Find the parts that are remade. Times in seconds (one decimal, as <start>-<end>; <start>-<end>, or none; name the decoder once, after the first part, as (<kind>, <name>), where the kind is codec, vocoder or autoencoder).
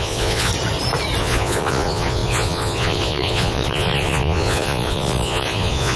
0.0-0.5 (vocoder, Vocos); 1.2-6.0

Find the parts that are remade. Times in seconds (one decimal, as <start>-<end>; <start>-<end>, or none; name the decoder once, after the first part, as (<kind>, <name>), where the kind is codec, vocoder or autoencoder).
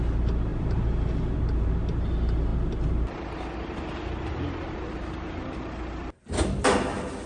none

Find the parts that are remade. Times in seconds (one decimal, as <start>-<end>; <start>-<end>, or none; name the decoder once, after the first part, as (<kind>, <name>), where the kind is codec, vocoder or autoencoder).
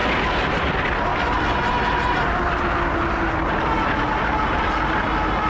none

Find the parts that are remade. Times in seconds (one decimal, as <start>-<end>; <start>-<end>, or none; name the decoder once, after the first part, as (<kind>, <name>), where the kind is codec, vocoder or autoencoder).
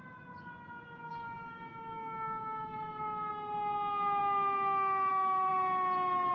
1.1-3.3 (codec, DAC)